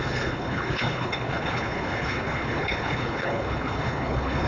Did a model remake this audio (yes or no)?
yes